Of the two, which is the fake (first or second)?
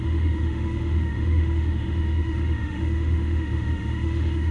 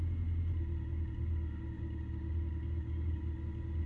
first